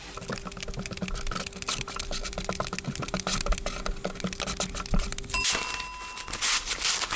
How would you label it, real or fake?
real